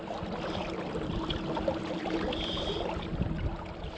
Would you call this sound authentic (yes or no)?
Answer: yes